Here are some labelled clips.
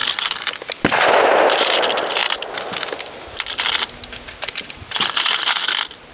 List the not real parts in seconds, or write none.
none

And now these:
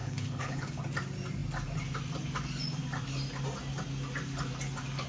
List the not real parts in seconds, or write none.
0.0-0.8 (codec, HILCodec)